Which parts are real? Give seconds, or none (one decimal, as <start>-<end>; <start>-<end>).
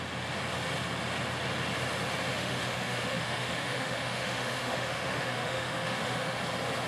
0.0-2.3; 6.4-6.9